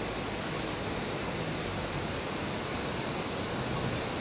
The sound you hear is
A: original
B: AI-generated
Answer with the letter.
A